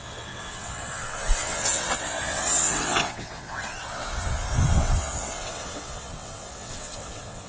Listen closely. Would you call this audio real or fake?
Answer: fake